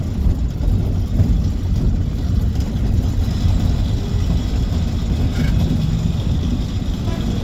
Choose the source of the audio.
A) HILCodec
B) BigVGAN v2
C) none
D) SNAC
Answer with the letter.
C